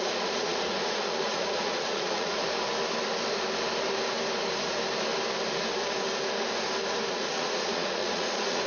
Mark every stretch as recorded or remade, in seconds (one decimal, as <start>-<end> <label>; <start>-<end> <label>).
0.0-2.4 remade; 2.4-7.1 recorded; 7.1-8.7 remade